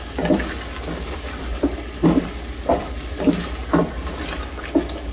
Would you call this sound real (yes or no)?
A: yes